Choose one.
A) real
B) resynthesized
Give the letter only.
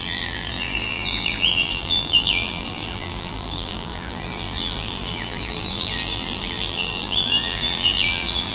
B